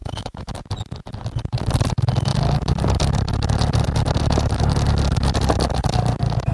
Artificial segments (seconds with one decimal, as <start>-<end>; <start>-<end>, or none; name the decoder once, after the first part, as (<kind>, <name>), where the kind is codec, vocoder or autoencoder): 0.0-0.5 (autoencoder, DAC-VAE)